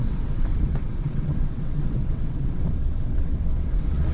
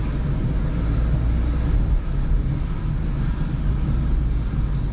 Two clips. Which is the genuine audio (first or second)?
second